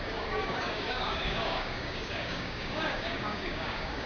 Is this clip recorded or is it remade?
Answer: remade